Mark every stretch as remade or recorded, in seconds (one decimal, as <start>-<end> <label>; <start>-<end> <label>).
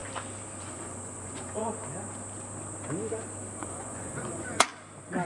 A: 0.0-0.6 recorded; 0.6-1.6 remade; 1.6-3.6 recorded; 3.6-4.7 remade; 4.7-5.3 recorded